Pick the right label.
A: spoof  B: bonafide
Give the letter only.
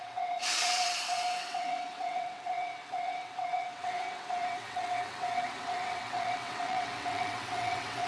A